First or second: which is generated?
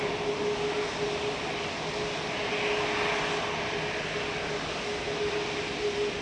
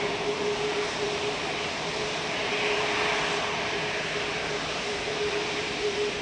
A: second